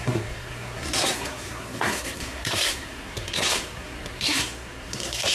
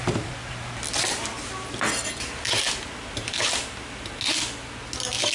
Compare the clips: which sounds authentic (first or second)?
second